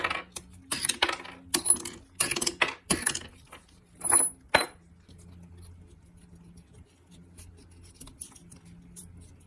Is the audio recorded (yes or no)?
yes